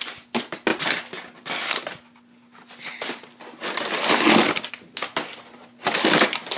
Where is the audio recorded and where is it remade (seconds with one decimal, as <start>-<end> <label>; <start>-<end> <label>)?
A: 0.0-6.6 recorded